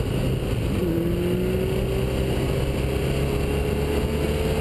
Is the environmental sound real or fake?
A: real